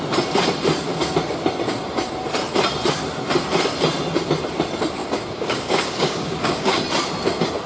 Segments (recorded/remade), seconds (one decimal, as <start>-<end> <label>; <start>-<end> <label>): 0.0-5.0 recorded; 5.0-6.8 remade; 6.8-7.7 recorded

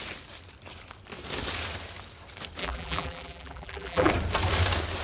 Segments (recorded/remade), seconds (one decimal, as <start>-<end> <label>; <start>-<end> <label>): 0.0-2.6 recorded; 2.6-4.1 remade; 4.1-5.0 recorded

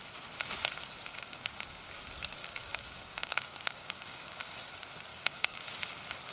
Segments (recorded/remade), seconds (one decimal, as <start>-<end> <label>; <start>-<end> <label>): 0.0-1.1 recorded; 1.1-1.9 remade; 1.9-2.4 recorded; 2.4-4.4 remade; 4.4-5.1 recorded; 5.1-5.6 remade; 5.6-6.3 recorded

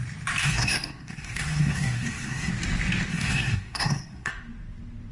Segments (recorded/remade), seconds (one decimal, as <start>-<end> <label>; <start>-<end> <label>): 0.0-0.4 recorded; 0.4-2.5 remade; 2.5-3.1 recorded; 3.1-4.3 remade; 4.3-5.1 recorded

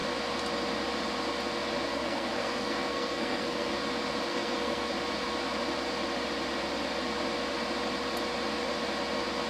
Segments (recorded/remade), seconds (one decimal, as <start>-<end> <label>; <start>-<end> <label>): 0.0-1.9 recorded; 1.9-3.7 remade; 3.7-4.3 recorded; 4.3-4.9 remade; 4.9-9.5 recorded

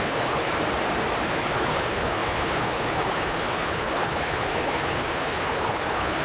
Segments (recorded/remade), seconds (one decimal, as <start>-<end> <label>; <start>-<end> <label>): 0.0-0.6 remade; 0.6-1.2 recorded; 1.2-6.2 remade

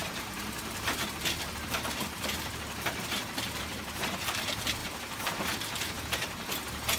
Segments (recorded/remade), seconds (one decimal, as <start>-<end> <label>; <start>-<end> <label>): 0.0-4.2 remade; 4.2-4.8 recorded; 4.8-7.0 remade

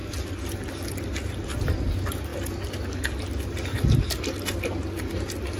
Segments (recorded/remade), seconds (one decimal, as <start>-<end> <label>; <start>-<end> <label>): 0.0-5.6 recorded